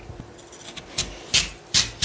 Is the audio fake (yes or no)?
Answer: no